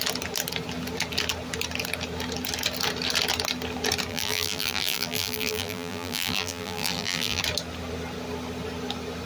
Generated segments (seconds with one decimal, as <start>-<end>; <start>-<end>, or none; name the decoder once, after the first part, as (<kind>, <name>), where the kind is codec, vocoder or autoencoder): 4.1-7.4 (vocoder, BigVGAN v2)